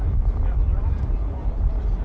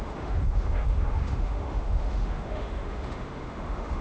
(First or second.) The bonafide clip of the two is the first